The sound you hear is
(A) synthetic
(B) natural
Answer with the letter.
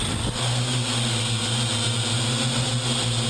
B